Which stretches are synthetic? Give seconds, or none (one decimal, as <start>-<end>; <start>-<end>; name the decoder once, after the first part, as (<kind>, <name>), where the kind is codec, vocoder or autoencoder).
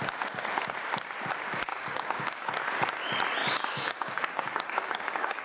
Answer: 1.7-2.5 (codec, DAC); 3.4-5.4